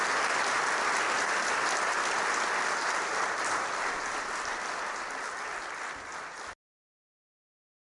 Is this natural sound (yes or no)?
yes